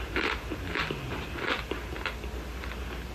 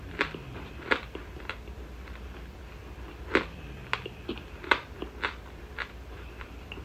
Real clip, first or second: first